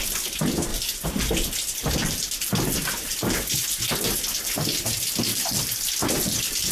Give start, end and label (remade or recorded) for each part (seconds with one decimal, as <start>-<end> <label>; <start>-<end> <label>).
0.0-0.7 recorded; 0.7-1.2 remade; 1.2-2.8 recorded; 2.8-3.8 remade; 3.8-5.3 recorded; 5.3-6.7 remade